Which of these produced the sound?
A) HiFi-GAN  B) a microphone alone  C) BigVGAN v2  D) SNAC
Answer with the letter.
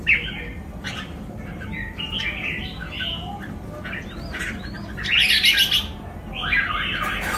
B